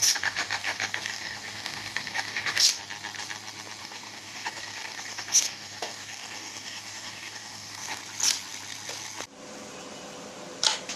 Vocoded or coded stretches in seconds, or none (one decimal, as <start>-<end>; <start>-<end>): 0.0-2.8; 3.8-8.0